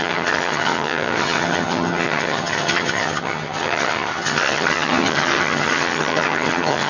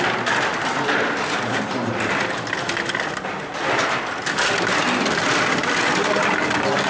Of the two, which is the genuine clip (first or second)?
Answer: second